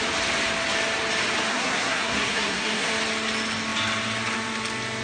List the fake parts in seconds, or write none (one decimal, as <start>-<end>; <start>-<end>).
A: 1.5-2.9